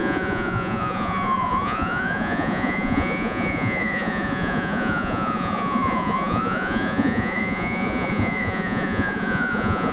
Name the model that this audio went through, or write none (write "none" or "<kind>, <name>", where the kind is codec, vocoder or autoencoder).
vocoder, Vocos